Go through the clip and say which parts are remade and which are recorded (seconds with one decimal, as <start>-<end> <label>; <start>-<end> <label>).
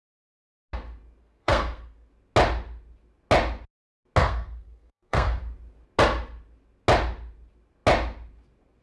0.0-1.2 recorded; 1.2-2.1 remade; 2.1-4.2 recorded; 4.2-5.4 remade; 5.4-8.8 recorded